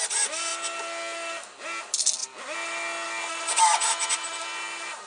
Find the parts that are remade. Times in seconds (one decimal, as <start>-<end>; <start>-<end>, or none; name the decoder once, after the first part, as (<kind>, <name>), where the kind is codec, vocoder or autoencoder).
none